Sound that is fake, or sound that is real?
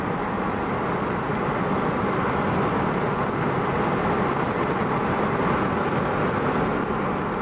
real